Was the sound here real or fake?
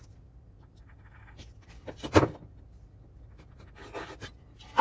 real